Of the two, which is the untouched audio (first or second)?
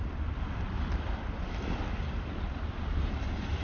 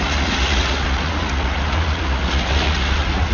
first